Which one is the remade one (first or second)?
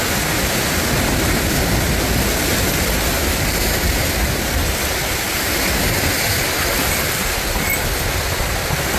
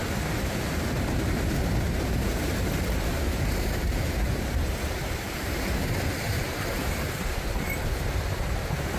second